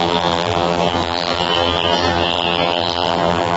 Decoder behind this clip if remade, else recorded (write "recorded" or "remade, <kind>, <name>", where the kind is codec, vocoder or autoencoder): remade, vocoder, BigVGAN v2